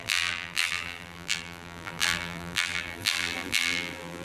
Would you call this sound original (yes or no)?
no